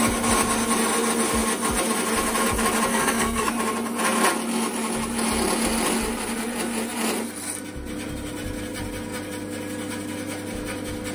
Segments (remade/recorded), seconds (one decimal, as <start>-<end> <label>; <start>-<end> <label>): 0.0-2.9 recorded; 2.9-3.5 remade; 3.5-11.1 recorded

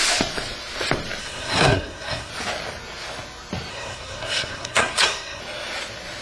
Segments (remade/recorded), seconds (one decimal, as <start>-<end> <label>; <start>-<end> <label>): 0.0-1.2 recorded; 1.2-2.3 remade; 2.3-3.7 recorded; 3.7-5.4 remade; 5.4-6.2 recorded

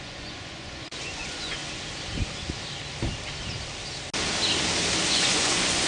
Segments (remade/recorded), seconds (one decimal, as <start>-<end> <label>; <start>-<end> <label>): 0.0-1.6 remade; 1.6-5.1 recorded; 5.1-5.9 remade